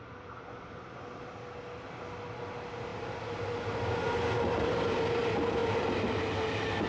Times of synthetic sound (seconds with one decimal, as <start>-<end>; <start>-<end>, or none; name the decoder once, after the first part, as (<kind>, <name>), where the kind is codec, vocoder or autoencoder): none